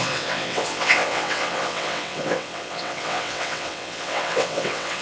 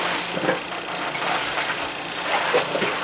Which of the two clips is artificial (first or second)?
first